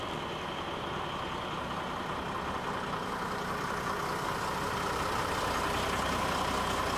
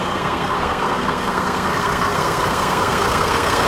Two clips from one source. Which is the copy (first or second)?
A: second